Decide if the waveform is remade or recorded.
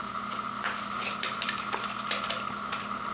recorded